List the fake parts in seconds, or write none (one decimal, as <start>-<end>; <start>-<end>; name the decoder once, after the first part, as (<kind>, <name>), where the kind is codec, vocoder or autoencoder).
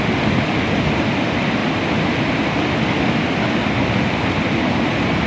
none